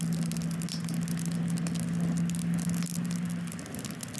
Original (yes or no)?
yes